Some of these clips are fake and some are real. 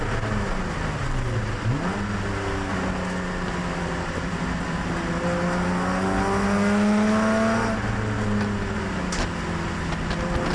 real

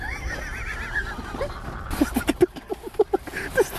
real